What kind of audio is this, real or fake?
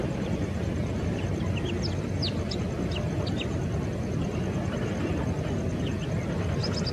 real